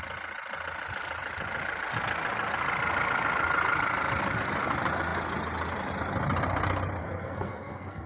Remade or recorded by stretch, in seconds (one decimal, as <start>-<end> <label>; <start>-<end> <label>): 0.0-7.0 recorded; 7.0-8.1 remade